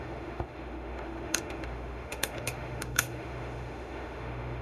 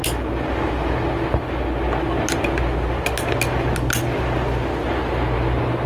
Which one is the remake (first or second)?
first